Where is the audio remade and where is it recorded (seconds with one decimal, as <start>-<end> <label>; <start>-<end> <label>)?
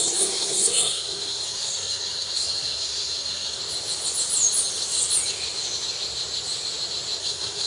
0.0-3.6 remade; 3.6-7.2 recorded; 7.2-7.7 remade